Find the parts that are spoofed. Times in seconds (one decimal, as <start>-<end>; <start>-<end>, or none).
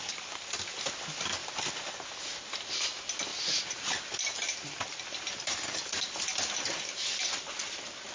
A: none